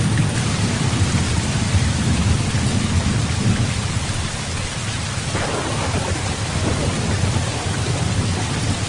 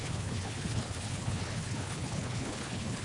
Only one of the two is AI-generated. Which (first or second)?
second